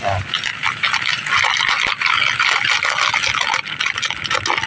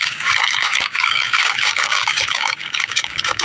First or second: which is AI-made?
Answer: second